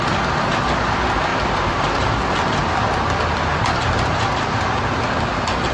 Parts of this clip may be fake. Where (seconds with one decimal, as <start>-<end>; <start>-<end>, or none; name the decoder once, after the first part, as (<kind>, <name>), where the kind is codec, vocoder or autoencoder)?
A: 1.3-2.1 (vocoder, BigVGAN v2); 3.5-4.8